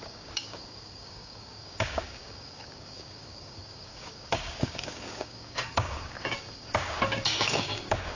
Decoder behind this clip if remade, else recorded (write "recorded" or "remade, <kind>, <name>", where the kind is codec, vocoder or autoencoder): remade, codec, DAC